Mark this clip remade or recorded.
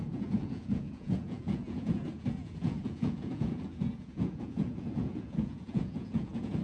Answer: remade